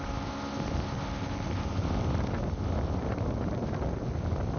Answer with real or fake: real